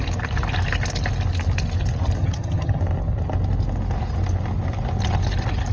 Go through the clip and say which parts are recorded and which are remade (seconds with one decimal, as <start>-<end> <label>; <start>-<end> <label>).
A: 0.0-2.2 recorded; 2.2-2.8 remade; 2.8-5.7 recorded